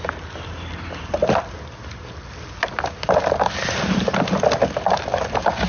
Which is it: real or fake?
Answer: real